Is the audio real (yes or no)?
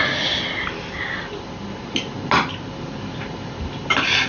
yes